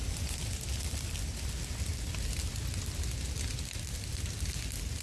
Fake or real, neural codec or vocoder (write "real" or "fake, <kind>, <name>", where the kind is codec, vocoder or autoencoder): real